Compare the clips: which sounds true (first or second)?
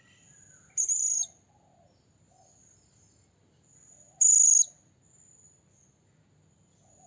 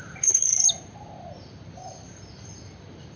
first